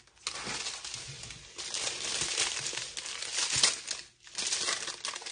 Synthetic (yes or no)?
no